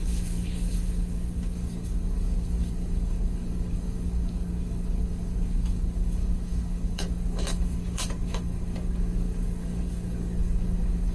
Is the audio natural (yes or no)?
no